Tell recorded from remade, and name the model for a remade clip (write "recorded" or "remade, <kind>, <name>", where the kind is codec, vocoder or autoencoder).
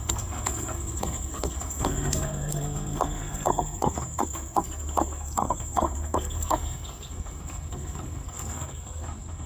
remade, codec, SNAC